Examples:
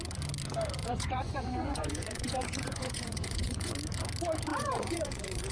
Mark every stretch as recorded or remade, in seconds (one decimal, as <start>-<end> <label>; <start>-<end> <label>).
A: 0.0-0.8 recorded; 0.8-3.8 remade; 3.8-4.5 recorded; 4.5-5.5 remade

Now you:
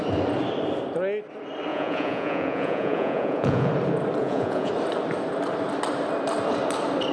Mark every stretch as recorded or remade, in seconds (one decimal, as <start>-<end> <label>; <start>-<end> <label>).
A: 0.0-1.7 recorded; 1.7-3.7 remade; 3.7-4.2 recorded; 4.2-4.7 remade; 4.7-7.1 recorded

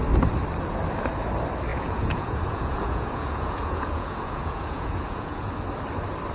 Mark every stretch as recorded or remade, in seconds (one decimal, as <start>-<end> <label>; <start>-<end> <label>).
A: 0.0-1.7 recorded; 1.7-5.5 remade; 5.5-6.3 recorded

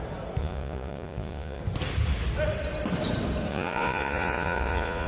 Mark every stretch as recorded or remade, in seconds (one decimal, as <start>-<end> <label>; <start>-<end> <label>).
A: 0.0-0.4 recorded; 0.4-1.6 remade; 1.6-3.5 recorded; 3.5-5.1 remade